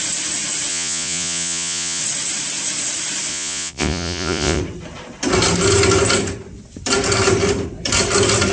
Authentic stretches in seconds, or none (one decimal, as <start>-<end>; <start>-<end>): 0.0-0.7; 2.0-3.3; 4.6-8.5